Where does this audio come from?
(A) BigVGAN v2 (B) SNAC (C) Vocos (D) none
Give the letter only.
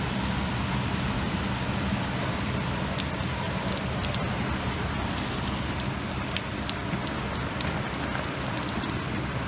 D